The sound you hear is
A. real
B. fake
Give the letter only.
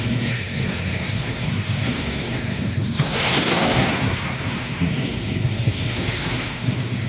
B